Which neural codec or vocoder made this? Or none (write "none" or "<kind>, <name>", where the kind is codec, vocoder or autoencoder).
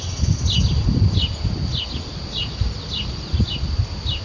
none